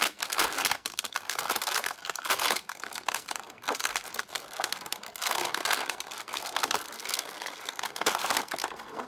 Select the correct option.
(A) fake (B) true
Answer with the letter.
A